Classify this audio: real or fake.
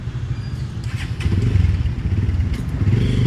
real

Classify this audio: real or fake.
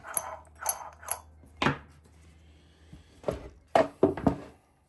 real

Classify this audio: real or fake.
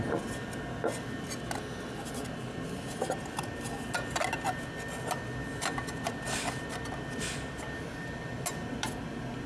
real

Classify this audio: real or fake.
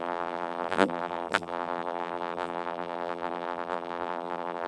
fake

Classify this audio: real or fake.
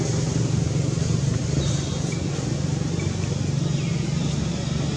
real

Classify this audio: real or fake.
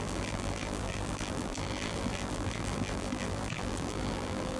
fake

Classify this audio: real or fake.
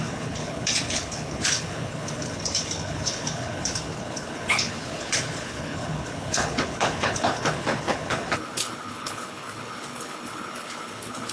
fake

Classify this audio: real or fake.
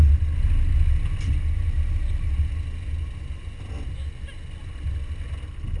real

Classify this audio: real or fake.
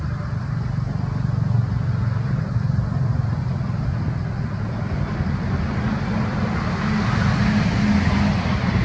real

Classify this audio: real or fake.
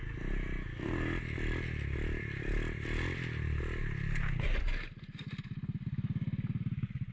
real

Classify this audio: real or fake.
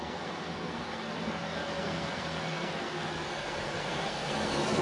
fake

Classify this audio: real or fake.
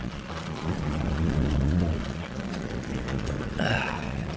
fake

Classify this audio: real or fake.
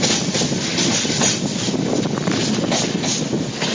real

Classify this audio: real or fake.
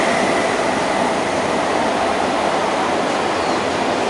real